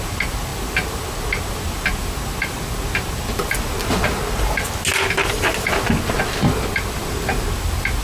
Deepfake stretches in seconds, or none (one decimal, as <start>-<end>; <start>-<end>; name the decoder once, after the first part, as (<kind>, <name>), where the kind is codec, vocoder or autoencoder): none